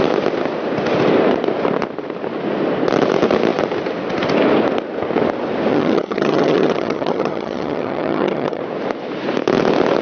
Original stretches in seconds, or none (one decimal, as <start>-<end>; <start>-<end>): 0.0-5.7; 8.6-10.0